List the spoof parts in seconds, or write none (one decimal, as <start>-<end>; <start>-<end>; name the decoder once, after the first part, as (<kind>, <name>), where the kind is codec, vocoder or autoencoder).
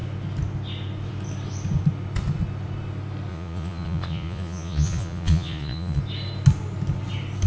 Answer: 3.3-6.0 (vocoder, Vocos)